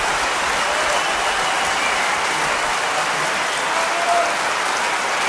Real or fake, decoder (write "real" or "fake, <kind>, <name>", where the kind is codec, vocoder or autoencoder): real